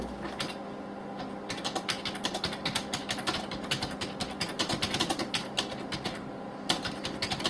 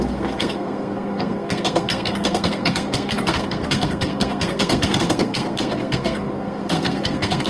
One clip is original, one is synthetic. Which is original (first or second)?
first